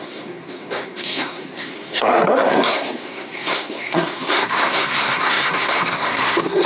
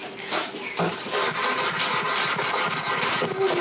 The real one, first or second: second